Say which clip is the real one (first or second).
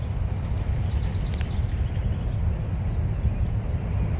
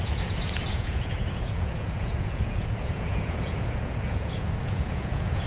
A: first